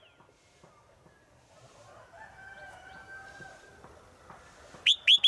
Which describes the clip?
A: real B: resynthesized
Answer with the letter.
A